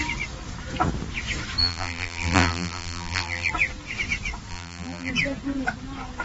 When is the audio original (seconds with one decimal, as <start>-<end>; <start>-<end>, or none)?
0.0-1.6; 3.5-4.5; 5.1-6.2